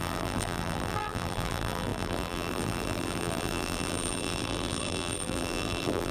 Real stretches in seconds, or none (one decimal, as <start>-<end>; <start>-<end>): none